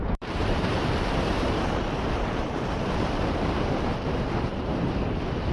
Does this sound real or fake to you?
fake